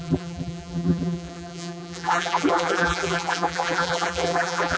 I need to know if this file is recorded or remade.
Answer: remade